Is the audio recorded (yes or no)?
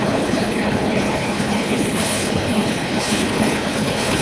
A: no